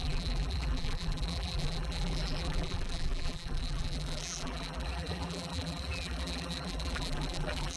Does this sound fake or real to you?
fake